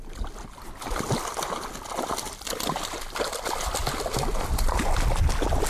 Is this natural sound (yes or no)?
yes